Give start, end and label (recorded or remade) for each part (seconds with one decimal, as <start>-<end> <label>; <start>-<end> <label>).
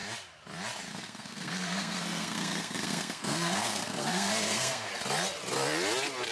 0.0-0.9 recorded; 0.9-4.9 remade; 4.9-6.3 recorded